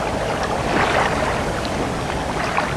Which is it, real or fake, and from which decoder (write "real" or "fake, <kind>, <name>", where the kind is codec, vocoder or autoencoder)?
real